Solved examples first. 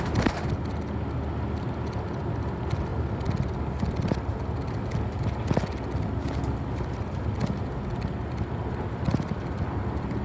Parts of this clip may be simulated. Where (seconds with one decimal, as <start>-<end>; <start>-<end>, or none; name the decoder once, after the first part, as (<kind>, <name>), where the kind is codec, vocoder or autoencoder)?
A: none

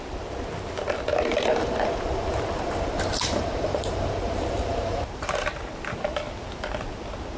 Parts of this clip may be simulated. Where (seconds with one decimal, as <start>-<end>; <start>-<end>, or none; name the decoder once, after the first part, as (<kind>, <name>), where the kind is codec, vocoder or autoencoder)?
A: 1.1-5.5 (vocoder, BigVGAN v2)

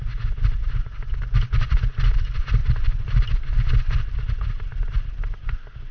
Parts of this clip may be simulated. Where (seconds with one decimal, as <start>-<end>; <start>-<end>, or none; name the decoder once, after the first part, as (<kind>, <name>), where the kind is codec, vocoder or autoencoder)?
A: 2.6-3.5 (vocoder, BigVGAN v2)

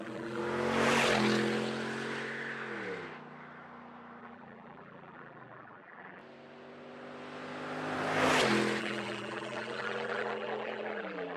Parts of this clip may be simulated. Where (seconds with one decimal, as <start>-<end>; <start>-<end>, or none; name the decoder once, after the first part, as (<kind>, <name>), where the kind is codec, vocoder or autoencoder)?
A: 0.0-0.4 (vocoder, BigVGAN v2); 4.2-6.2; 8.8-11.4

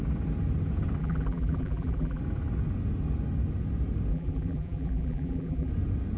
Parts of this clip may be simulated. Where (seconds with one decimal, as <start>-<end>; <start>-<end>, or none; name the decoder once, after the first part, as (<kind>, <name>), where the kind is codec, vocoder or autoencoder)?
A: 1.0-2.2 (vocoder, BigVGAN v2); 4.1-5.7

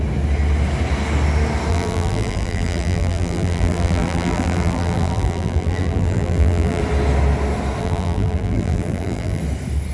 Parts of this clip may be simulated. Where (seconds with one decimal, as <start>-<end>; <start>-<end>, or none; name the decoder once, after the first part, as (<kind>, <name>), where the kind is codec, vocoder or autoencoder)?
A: 1.7-6.8 (vocoder, BigVGAN v2); 7.8-9.4

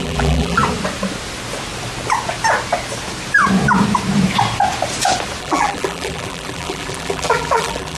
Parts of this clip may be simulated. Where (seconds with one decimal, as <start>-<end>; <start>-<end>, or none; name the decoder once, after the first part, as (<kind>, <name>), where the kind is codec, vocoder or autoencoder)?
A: 0.0-0.6 (vocoder, BigVGAN v2); 5.4-8.0

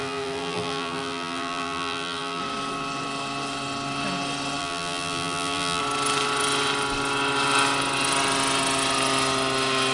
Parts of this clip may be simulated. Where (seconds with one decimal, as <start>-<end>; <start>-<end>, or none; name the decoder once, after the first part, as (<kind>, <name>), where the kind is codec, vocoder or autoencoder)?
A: 0.0-2.4 (vocoder, BigVGAN v2); 4.6-5.8